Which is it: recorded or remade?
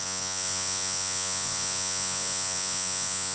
remade